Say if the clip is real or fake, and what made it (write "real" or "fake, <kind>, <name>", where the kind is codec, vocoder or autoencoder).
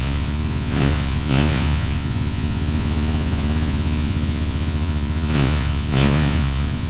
fake, vocoder, Vocos